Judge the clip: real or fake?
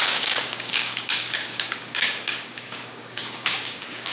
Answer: fake